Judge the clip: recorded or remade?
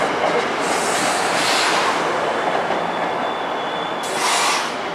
recorded